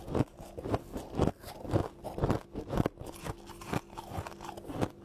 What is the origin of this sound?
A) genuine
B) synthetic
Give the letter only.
A